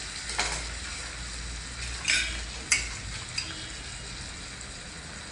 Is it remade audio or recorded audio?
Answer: recorded